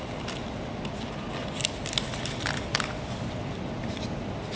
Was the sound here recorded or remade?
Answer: recorded